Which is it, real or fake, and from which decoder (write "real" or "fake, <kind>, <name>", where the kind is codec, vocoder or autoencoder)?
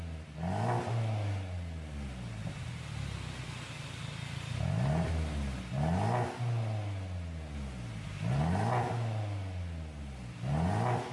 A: real